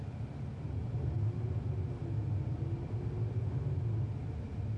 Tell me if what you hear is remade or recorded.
recorded